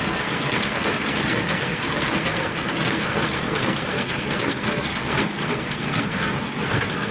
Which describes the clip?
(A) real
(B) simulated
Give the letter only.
B